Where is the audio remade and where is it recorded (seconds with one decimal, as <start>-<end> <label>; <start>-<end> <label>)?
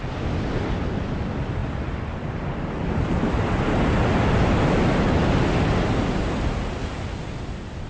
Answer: 0.0-7.9 recorded